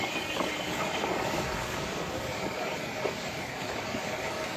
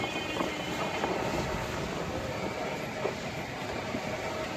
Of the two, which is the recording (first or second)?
second